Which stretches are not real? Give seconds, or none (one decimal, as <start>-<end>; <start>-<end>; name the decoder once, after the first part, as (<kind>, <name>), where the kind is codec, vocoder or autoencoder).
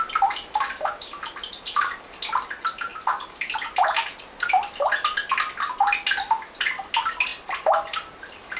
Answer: none